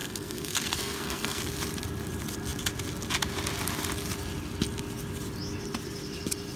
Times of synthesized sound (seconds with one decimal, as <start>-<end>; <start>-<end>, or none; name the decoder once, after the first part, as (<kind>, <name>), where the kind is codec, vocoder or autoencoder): 0.0-1.4 (codec, SNAC)